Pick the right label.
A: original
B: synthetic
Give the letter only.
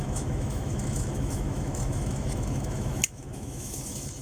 B